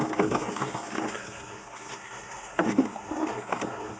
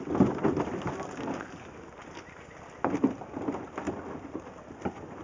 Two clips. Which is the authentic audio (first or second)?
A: second